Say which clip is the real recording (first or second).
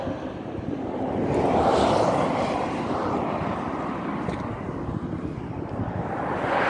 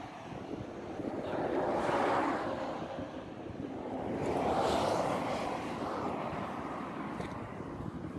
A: first